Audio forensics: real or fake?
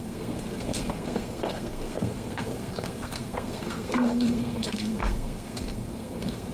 fake